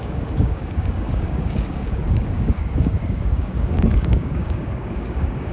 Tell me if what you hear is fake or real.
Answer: fake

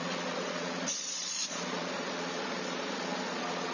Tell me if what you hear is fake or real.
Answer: fake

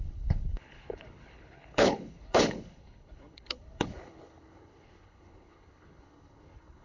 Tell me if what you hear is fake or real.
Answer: fake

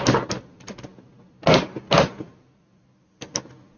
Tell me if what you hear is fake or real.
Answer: real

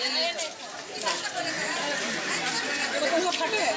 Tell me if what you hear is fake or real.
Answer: real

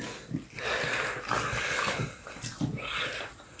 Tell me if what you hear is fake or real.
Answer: real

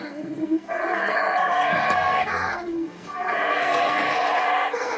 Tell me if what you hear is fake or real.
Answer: fake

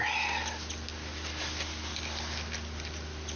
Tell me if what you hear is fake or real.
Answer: real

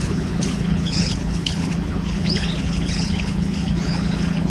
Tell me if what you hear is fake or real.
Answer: fake